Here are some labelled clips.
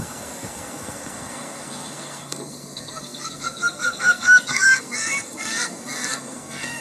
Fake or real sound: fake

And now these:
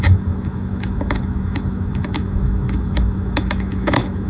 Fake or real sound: fake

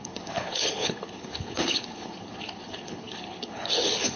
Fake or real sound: fake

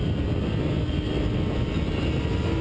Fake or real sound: real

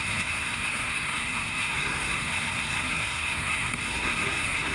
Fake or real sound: fake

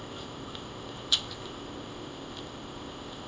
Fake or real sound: fake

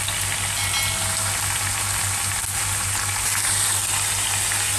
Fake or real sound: real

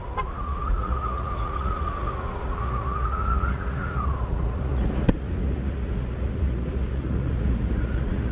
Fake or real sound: fake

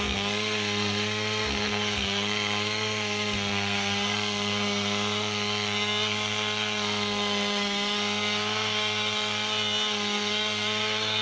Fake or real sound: fake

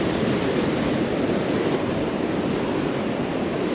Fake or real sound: fake